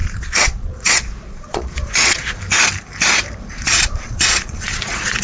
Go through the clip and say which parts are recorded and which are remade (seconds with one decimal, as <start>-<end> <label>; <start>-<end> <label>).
0.0-2.4 remade; 2.4-3.5 recorded; 3.5-5.2 remade